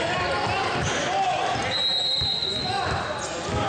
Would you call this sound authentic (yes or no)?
yes